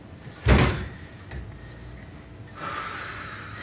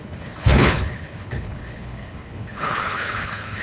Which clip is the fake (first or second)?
second